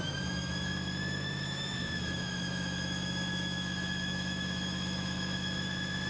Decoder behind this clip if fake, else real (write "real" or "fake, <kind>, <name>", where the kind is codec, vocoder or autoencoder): fake, autoencoder, DAC-VAE